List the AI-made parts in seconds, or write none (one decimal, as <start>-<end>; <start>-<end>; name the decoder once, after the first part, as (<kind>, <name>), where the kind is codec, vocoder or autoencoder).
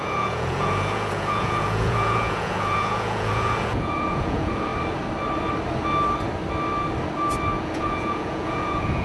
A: 0.0-4.7 (vocoder, Vocos); 7.6-9.0